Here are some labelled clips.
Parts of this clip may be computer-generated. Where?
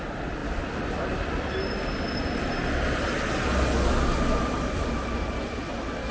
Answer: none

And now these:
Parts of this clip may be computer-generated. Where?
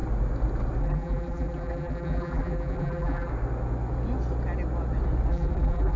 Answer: 0.8-3.3 (vocoder, BigVGAN v2); 5.3-6.0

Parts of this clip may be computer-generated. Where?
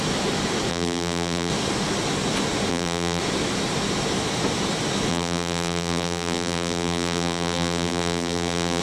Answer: 0.7-1.5 (vocoder, BigVGAN v2); 2.7-3.2; 5.1-8.8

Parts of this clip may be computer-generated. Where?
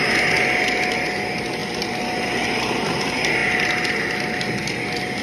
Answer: none